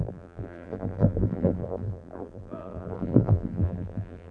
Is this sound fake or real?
fake